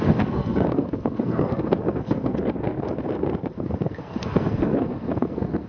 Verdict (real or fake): fake